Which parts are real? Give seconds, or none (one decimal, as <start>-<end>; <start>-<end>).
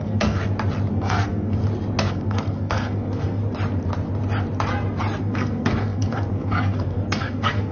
0.4-0.9; 1.6-2.1; 3.4-5.2